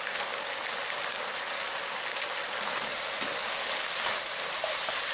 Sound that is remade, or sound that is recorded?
recorded